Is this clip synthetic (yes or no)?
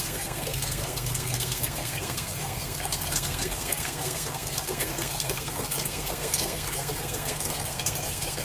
yes